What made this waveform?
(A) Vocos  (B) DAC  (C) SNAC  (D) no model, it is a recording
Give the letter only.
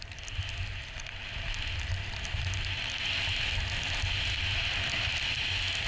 D